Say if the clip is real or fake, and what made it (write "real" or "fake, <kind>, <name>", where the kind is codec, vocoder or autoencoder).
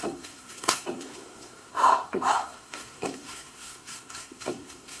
fake, codec, SNAC